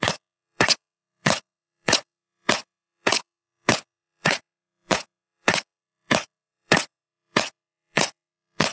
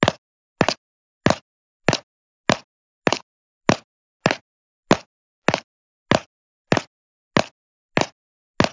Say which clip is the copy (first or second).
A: first